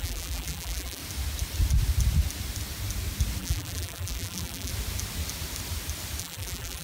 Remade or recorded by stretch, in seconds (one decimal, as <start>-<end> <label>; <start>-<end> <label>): 0.0-1.0 remade; 1.0-3.4 recorded; 3.4-4.7 remade; 4.7-6.2 recorded; 6.2-6.8 remade